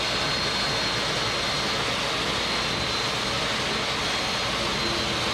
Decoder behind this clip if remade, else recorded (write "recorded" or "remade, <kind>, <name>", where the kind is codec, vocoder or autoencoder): recorded